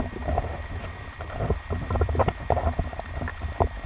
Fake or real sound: fake